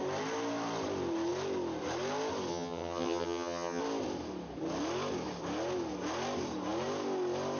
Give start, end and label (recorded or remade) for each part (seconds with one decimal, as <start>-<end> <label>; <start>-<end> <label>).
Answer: 0.0-2.5 recorded; 2.5-3.8 remade; 3.8-7.6 recorded